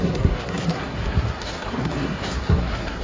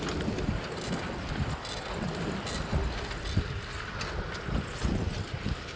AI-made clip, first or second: first